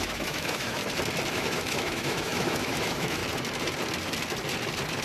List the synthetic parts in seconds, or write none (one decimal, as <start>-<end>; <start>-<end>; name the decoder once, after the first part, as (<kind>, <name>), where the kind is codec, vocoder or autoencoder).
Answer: 0.0-0.8 (autoencoder, DAC-VAE); 1.3-3.2